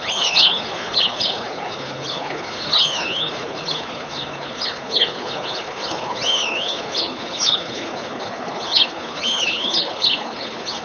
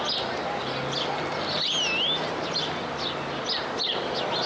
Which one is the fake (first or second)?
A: first